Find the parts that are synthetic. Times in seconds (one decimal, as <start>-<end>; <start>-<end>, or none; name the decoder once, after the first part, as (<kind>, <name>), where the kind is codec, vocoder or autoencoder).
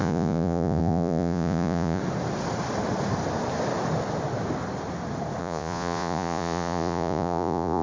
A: 0.0-2.0 (vocoder, Vocos); 5.4-7.8